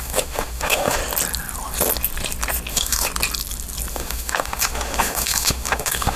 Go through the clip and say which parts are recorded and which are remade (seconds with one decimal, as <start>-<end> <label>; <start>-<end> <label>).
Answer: 0.0-1.0 remade; 1.0-2.7 recorded; 2.7-3.1 remade; 3.1-3.9 recorded; 3.9-6.2 remade